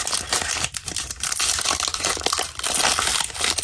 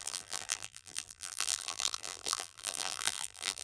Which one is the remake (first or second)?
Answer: second